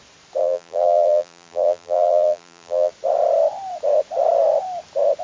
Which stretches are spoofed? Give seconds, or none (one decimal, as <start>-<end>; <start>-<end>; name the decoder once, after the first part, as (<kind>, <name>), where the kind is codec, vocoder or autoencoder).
0.4-2.9 (vocoder, BigVGAN v2)